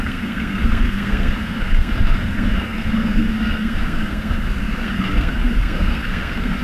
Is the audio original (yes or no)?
no